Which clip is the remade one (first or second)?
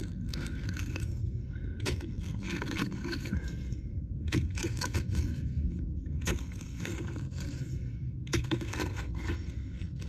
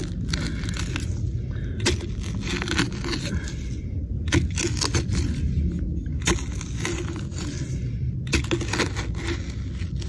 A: first